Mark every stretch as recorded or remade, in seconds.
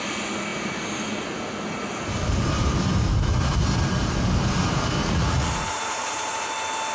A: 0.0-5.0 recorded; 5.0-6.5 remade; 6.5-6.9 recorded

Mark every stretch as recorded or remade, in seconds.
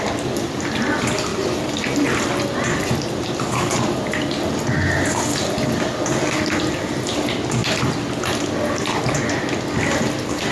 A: 0.0-10.5 recorded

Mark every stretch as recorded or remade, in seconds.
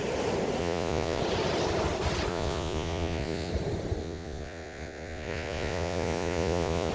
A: 0.0-0.6 recorded; 0.6-1.2 remade; 1.2-2.3 recorded; 2.3-3.5 remade; 3.5-4.0 recorded; 4.0-6.9 remade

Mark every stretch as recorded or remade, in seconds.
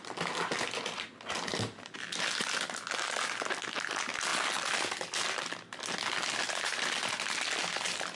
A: 0.0-8.2 recorded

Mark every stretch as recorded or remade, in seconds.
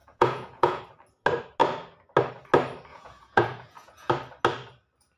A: 0.0-0.8 remade; 0.8-2.9 recorded; 2.9-4.1 remade; 4.1-5.2 recorded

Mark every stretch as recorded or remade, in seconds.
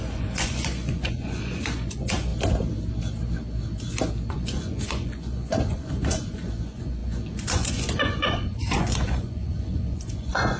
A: 0.0-2.3 remade; 2.3-4.3 recorded; 4.3-10.6 remade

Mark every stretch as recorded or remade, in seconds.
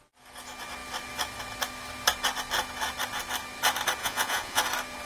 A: 0.0-4.0 recorded; 4.0-4.6 remade; 4.6-5.1 recorded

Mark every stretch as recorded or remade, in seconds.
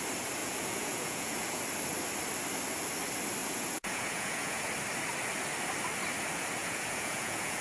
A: 0.0-0.4 recorded; 0.4-1.6 remade; 1.6-3.4 recorded; 3.4-4.7 remade; 4.7-6.6 recorded; 6.6-7.6 remade